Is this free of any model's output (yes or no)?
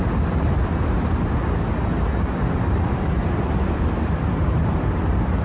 yes